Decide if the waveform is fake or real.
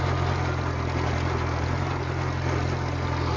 real